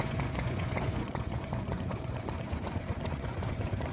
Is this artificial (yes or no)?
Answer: yes